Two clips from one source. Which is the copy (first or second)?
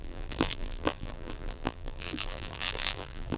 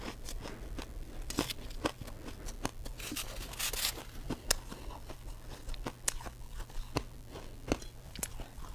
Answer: first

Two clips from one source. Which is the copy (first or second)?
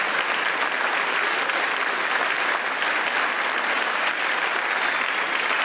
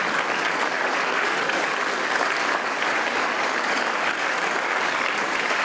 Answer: second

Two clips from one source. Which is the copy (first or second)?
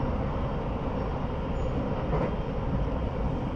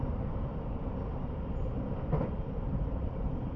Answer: second